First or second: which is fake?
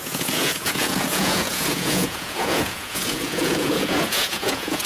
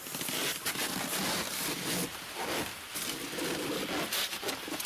first